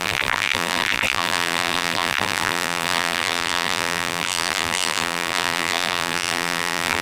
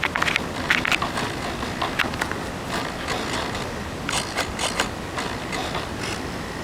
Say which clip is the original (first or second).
second